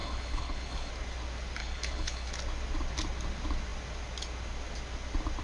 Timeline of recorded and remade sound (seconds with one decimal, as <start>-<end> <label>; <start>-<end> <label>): 0.0-0.9 remade; 0.9-1.6 recorded; 1.6-2.3 remade; 2.3-5.4 recorded